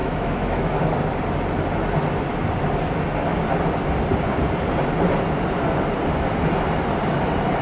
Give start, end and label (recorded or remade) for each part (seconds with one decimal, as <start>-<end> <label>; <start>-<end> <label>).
0.0-0.8 remade; 0.8-7.6 recorded